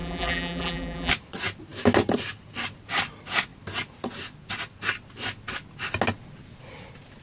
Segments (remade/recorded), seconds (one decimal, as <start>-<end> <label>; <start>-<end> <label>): 0.0-1.1 remade; 1.1-7.2 recorded